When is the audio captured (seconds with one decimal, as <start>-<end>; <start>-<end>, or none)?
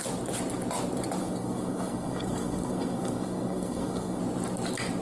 0.0-1.2; 4.2-5.0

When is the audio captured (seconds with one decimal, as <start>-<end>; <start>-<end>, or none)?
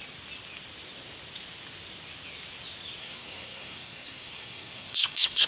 0.0-3.0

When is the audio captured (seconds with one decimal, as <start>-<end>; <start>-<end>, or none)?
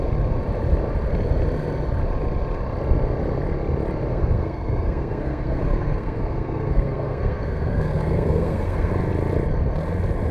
0.0-4.1; 8.9-10.3